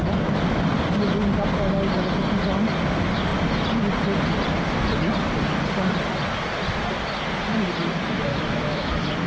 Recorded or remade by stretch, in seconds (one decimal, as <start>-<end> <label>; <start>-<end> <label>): 0.0-8.3 recorded; 8.3-8.9 remade; 8.9-9.3 recorded